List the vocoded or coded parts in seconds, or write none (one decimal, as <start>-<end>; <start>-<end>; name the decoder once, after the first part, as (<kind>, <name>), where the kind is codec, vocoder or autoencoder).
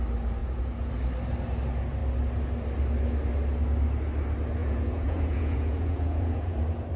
0.4-0.9 (vocoder, Vocos); 4.6-6.6